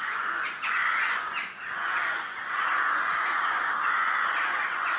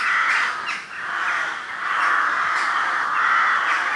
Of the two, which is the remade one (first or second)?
first